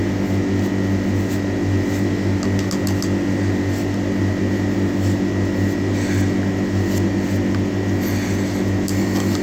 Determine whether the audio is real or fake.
real